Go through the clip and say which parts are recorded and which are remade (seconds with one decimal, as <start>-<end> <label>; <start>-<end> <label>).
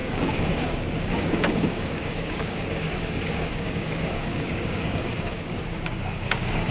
0.0-6.7 remade